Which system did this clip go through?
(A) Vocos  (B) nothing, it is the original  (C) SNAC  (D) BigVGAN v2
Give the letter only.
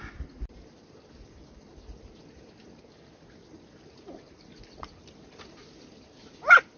B